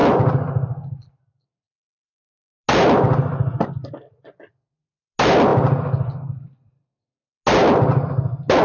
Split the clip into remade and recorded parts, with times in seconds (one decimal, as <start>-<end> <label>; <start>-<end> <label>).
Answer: 0.0-8.6 recorded